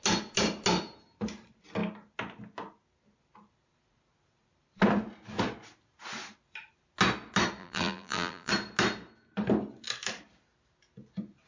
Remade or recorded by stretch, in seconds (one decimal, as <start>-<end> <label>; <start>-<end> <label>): 0.0-7.6 recorded; 7.6-8.5 remade; 8.5-11.5 recorded